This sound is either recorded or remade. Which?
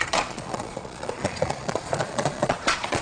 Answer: remade